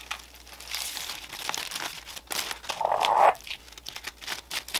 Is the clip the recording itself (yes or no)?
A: yes